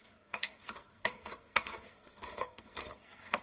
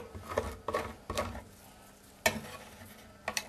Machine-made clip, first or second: first